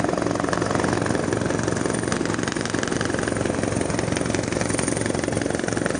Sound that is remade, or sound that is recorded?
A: remade